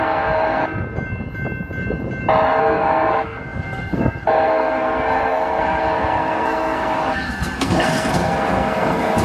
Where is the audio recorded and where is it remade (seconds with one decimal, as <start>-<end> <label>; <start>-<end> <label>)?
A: 0.0-0.6 remade; 0.6-2.6 recorded; 2.6-9.2 remade